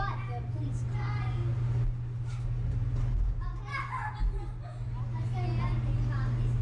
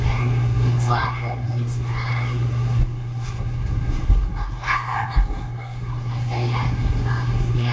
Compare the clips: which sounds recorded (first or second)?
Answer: first